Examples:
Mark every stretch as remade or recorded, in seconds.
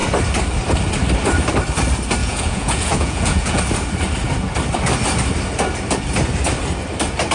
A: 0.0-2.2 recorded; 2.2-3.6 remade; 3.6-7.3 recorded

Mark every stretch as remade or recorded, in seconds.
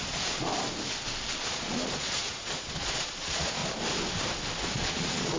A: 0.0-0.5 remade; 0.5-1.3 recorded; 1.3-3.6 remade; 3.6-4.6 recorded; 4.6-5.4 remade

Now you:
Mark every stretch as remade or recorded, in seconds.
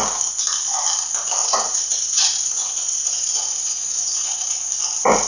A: 0.0-1.4 recorded; 1.4-4.6 remade; 4.6-5.3 recorded